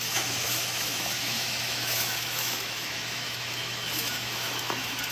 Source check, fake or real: fake